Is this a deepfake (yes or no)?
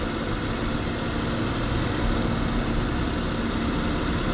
no